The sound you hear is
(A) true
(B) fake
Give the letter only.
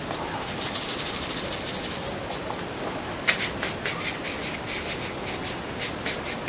A